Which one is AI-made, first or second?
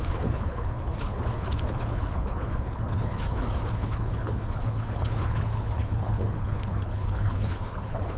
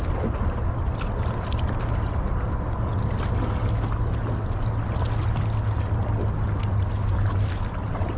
first